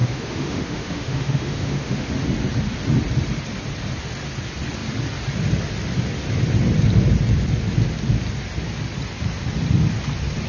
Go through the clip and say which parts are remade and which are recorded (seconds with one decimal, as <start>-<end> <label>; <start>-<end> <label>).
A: 0.0-2.1 remade; 2.1-10.5 recorded